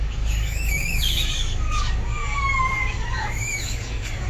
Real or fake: fake